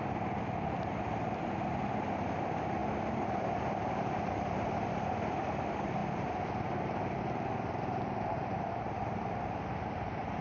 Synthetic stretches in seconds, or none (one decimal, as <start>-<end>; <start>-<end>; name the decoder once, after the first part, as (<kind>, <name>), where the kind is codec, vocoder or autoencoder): 0.0-6.0 (vocoder, BigVGAN v2); 8.3-10.4